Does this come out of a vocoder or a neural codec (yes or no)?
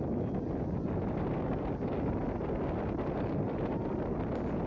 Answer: no